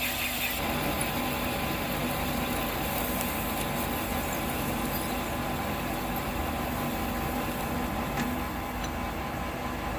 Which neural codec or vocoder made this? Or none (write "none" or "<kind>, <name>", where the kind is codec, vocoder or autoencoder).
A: none